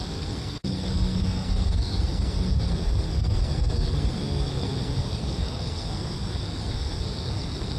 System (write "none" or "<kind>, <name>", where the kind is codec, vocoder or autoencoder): codec, SNAC